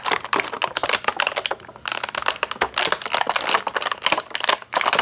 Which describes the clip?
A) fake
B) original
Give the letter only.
B